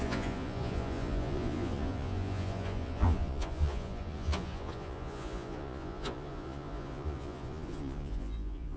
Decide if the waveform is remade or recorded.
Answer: remade